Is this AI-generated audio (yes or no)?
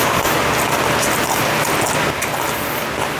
no